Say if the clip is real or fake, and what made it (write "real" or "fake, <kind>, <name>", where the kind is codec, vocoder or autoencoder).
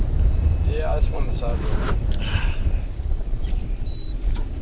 fake, vocoder, BigVGAN v2